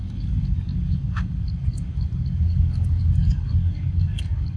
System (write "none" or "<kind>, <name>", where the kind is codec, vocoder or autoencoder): codec, DAC